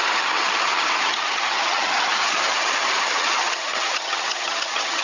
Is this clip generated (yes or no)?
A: yes